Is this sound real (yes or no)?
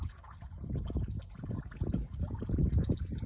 yes